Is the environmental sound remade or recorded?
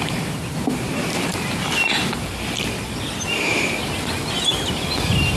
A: recorded